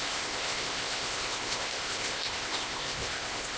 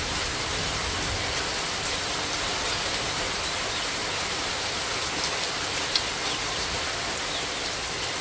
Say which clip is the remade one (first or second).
first